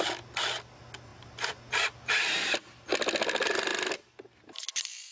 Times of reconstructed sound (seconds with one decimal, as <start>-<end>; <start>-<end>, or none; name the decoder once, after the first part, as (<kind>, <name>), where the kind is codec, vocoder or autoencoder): none